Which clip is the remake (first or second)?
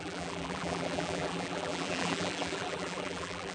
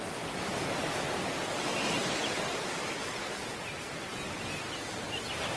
first